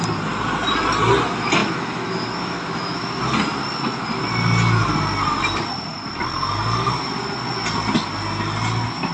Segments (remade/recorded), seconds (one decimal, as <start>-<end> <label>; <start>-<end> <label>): 0.0-1.6 recorded; 1.6-3.2 remade; 3.2-9.1 recorded